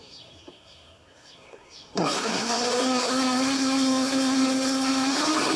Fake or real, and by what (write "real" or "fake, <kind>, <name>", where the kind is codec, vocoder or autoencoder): fake, codec, SNAC